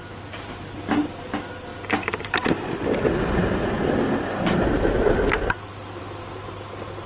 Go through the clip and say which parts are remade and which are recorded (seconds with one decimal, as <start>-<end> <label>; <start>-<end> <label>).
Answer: 0.0-7.1 recorded